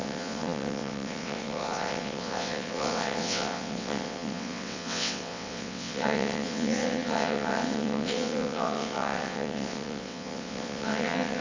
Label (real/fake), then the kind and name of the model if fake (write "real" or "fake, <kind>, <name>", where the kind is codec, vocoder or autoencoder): fake, vocoder, WaveNeXt